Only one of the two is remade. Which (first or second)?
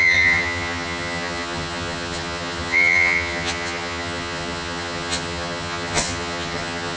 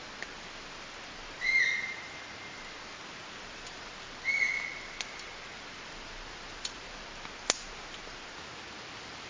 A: first